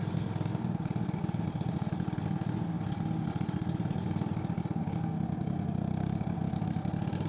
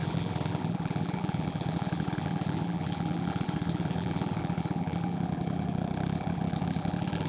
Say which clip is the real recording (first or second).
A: first